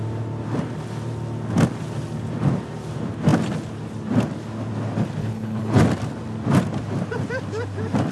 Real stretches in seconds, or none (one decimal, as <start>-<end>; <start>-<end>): 0.0-5.2; 5.8-8.1